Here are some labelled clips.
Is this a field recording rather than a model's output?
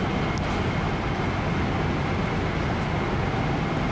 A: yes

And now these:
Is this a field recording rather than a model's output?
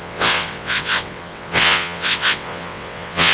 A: no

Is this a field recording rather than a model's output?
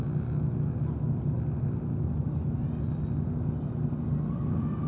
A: yes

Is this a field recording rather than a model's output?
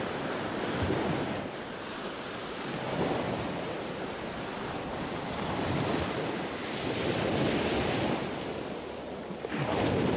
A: yes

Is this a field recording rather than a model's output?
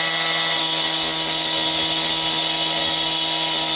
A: yes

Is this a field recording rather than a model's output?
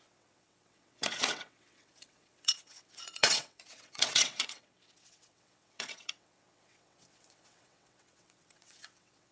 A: no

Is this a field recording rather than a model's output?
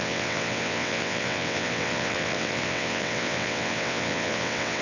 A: no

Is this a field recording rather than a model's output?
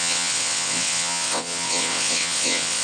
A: no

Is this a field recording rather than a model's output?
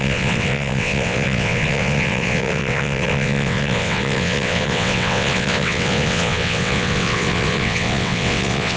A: no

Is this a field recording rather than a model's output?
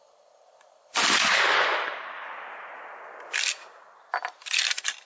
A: yes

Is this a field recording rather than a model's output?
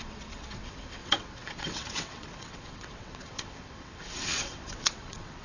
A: no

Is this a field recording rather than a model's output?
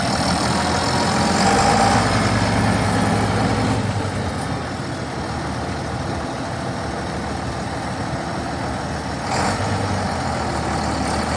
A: yes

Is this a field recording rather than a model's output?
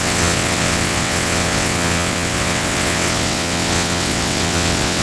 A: no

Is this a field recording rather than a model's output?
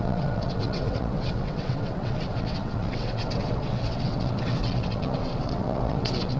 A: no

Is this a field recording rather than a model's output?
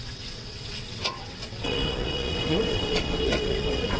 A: no